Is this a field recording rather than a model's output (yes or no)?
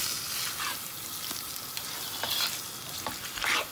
yes